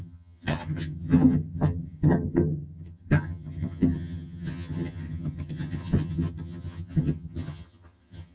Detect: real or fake fake